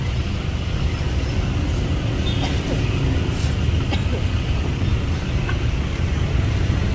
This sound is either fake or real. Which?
real